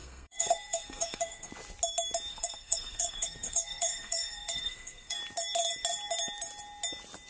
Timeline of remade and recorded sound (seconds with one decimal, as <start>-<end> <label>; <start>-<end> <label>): 0.0-1.5 remade; 1.5-2.3 recorded; 2.3-5.2 remade; 5.2-7.3 recorded